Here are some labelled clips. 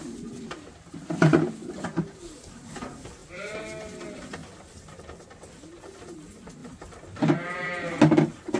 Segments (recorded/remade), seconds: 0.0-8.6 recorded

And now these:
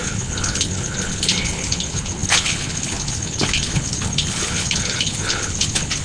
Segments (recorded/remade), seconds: 0.0-6.0 remade

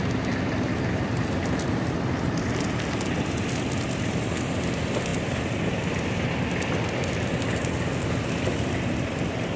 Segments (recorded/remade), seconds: 0.0-9.6 recorded

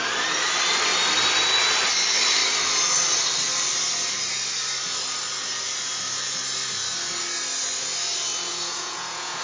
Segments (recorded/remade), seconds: 0.0-8.5 recorded; 8.5-9.4 remade